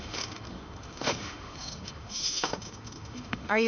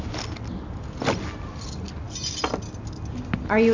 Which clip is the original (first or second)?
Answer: second